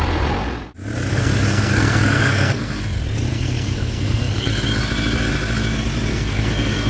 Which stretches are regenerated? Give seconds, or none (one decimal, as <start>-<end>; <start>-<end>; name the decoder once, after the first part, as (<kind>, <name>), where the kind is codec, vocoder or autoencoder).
1.1-2.8 (codec, SNAC); 3.3-4.5; 6.1-6.9

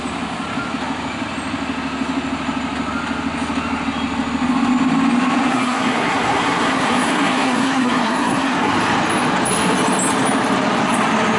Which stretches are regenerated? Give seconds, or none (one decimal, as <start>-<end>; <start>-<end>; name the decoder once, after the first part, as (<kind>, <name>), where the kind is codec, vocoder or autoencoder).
5.5-8.7 (codec, SNAC)

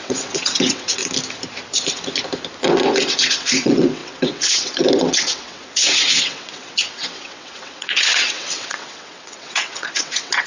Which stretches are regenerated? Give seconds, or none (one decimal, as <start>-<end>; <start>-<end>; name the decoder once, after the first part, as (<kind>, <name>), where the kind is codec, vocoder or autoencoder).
0.0-1.0 (vocoder, WaveNeXt); 2.6-10.5